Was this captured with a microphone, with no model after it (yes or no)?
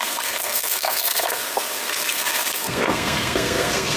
no